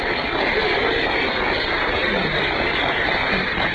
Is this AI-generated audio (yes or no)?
no